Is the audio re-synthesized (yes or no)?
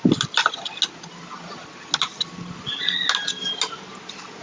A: no